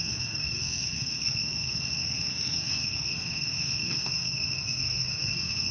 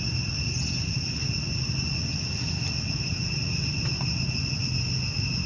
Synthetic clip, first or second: first